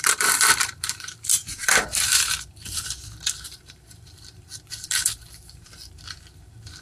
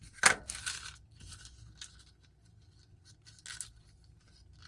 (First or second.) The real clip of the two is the second